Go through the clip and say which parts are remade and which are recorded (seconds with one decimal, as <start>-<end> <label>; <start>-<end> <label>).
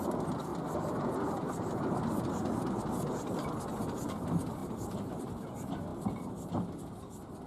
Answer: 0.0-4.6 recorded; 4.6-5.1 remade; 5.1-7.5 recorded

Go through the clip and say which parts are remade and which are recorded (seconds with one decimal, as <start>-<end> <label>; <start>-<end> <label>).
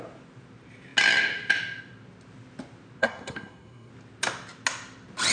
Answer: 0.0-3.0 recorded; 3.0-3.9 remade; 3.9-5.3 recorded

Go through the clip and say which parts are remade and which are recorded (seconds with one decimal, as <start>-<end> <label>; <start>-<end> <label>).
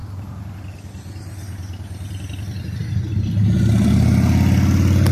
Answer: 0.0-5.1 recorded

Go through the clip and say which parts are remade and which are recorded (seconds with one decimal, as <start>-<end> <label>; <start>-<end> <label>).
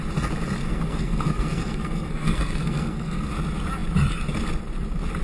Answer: 0.0-0.6 recorded; 0.6-3.3 remade; 3.3-5.2 recorded